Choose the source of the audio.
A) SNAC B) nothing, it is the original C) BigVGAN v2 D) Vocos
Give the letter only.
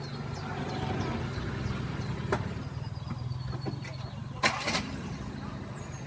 B